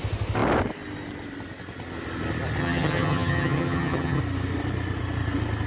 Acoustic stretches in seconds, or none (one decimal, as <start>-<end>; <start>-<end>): 0.0-2.6; 4.2-5.7